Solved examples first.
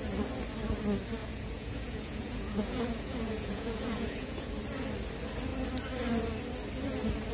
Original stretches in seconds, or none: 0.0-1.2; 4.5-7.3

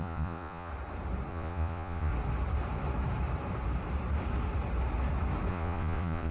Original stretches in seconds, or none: 0.7-1.3; 2.1-5.5

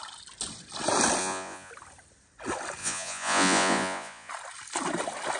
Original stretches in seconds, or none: 0.0-1.2; 1.7-2.8; 4.3-5.4

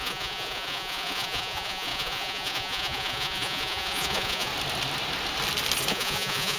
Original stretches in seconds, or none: 4.5-5.9